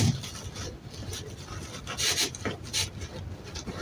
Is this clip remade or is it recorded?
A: recorded